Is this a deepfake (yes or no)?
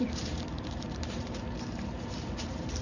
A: yes